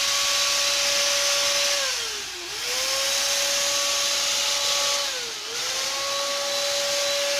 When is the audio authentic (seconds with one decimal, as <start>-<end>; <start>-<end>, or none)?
0.0-7.4